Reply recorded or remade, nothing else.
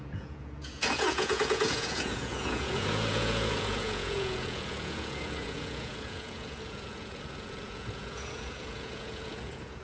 remade